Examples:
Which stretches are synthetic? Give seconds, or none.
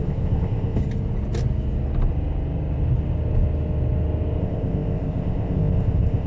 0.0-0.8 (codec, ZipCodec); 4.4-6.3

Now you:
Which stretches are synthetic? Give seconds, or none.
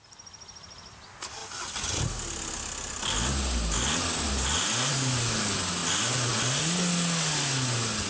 none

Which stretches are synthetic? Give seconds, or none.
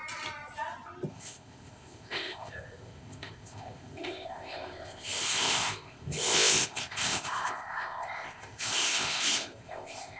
1.1-10.2 (codec, ZipCodec)